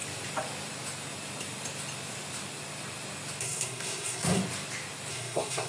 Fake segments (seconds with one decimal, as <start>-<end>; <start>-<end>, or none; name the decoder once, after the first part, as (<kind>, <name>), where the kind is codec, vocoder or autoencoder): 3.4-4.4 (codec, SNAC); 5.1-5.7